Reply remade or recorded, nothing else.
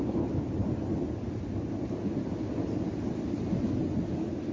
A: recorded